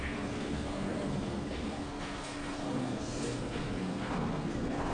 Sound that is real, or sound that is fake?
fake